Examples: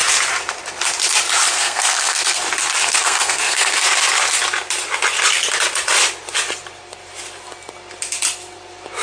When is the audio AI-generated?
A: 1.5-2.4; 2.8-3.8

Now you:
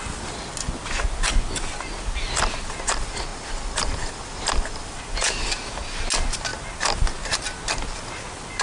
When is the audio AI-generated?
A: none

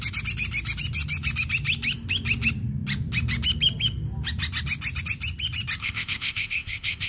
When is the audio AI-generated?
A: 5.8-7.1

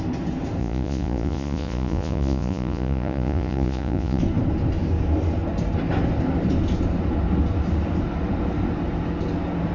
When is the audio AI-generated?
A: 0.6-4.2